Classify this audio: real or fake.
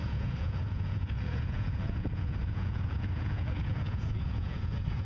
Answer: fake